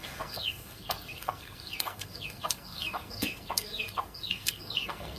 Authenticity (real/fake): fake